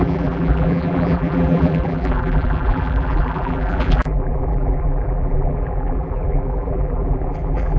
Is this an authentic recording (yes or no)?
no